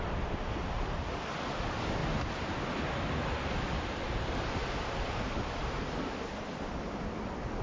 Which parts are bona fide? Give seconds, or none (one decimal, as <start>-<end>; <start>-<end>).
0.0-7.6